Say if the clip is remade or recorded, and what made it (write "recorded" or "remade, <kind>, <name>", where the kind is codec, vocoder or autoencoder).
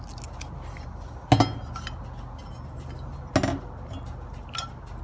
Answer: recorded